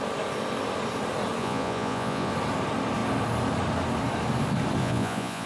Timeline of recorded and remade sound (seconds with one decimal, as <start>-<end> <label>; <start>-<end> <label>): 0.0-1.4 recorded; 1.4-2.3 remade; 2.3-4.8 recorded; 4.8-5.5 remade